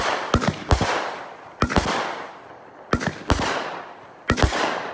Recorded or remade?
recorded